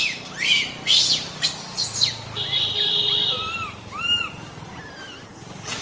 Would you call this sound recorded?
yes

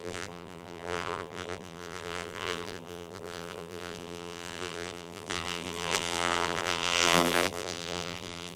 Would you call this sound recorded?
no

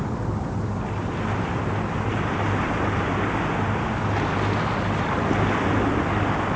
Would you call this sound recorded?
yes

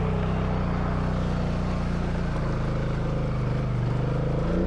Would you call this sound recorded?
yes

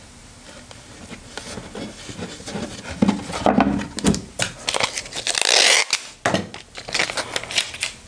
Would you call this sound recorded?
yes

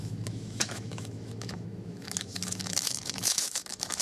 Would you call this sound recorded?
no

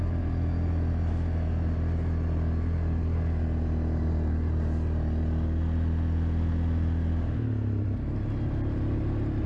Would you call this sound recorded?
yes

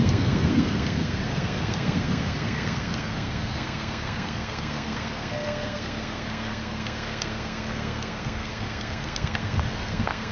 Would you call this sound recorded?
no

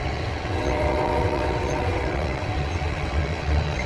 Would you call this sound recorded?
no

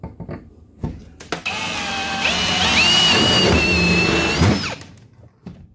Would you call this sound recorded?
yes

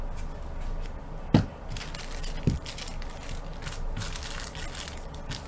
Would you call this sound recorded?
yes